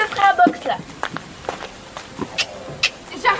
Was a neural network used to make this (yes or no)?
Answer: no